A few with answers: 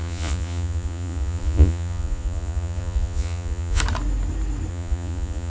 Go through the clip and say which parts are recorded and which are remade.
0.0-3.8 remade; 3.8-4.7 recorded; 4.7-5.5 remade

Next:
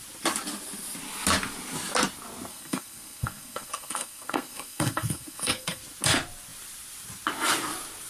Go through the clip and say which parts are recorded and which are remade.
0.0-2.5 recorded; 2.5-5.8 remade; 5.8-8.1 recorded

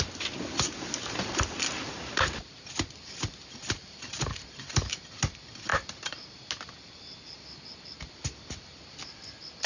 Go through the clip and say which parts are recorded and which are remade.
0.0-9.7 recorded

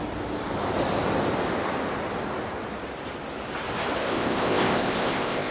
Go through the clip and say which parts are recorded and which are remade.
0.0-4.0 recorded; 4.0-5.5 remade